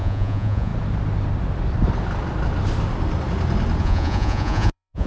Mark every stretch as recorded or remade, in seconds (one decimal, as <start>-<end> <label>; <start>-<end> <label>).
0.0-0.7 remade; 0.7-3.8 recorded; 3.8-5.1 remade